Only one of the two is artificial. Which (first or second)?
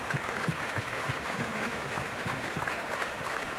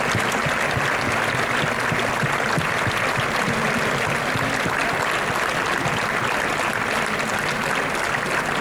first